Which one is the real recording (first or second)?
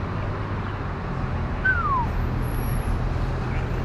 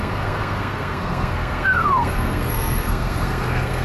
first